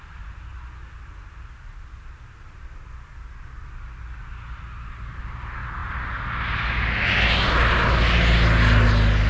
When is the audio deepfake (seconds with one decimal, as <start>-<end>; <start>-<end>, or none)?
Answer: none